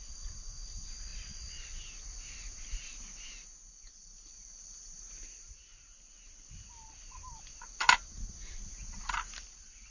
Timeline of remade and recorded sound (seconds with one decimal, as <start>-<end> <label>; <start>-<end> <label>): 0.0-9.9 recorded